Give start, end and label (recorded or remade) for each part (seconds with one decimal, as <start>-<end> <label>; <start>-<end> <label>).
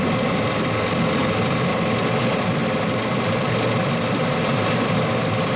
0.0-5.6 recorded